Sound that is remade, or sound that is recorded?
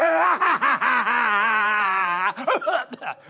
remade